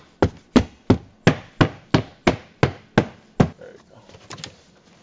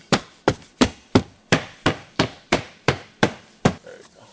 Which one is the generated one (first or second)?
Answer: second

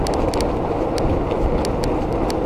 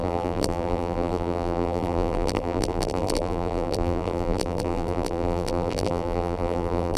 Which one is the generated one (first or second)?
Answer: second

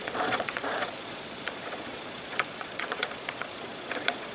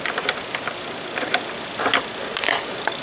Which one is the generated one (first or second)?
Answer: first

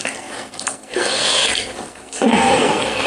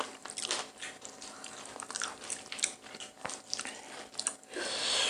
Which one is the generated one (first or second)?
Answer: first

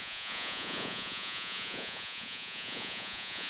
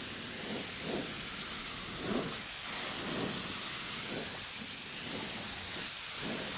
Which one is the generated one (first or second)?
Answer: first